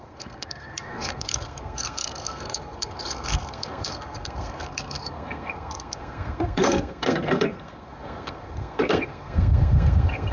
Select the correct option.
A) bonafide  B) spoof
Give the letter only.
B